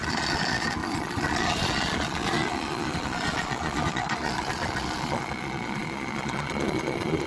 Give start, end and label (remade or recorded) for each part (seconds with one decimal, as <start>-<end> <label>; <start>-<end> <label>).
0.0-7.3 remade